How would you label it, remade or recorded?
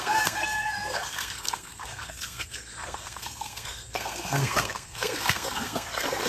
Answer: remade